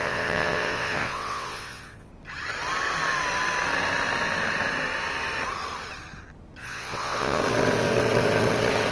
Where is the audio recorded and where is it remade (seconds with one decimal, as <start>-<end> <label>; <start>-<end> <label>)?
0.0-2.1 remade; 2.1-6.6 recorded; 6.6-7.4 remade; 7.4-8.9 recorded